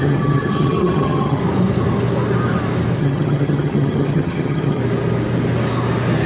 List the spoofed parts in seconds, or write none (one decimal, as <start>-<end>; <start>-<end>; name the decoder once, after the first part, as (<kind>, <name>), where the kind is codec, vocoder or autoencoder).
0.0-1.4 (vocoder, HiFi-GAN); 3.0-4.8